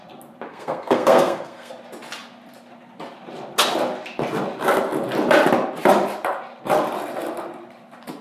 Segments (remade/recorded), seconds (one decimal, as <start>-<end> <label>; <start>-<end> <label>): 0.0-0.5 recorded; 0.5-1.7 remade; 1.7-8.2 recorded